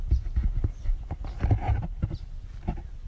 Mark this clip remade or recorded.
recorded